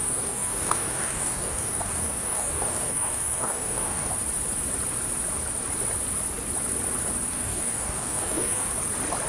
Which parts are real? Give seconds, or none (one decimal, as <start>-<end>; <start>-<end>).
4.1-7.3; 8.7-9.3